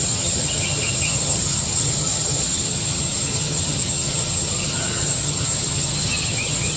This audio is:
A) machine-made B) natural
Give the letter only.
A